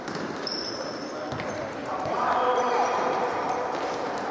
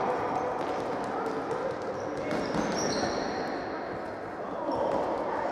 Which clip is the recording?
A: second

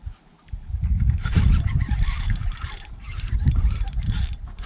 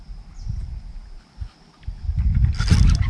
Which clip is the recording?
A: second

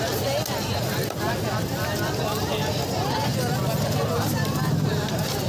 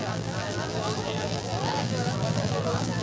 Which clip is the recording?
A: first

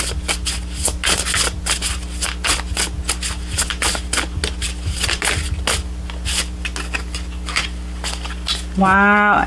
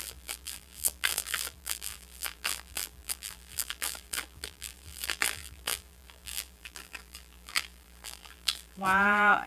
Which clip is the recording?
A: first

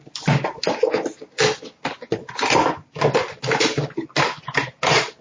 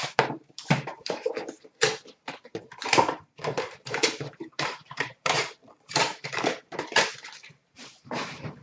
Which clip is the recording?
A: first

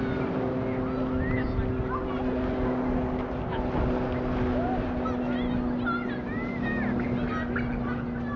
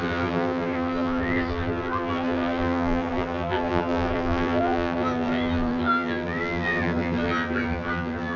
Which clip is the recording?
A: first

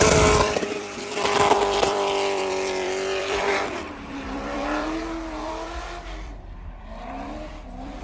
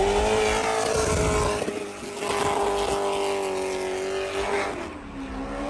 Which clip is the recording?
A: second